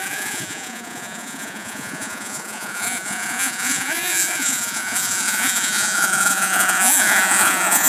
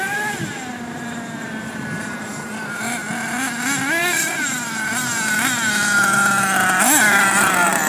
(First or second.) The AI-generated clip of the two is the first